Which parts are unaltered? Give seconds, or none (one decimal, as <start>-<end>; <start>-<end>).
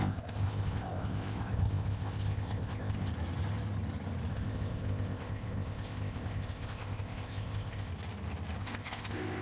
3.1-4.3; 7.9-8.6